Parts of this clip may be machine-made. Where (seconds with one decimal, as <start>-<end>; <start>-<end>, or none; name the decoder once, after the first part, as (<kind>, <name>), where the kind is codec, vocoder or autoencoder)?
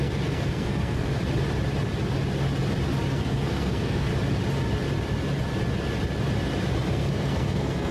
0.0-1.1 (codec, SNAC); 3.1-4.1; 6.9-7.9